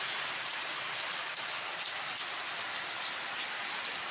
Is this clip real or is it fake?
real